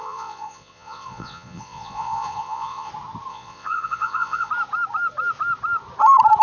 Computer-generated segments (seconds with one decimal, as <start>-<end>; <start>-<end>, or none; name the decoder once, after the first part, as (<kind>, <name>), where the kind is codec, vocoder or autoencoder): 0.0-2.9 (vocoder, Vocos); 3.3-4.5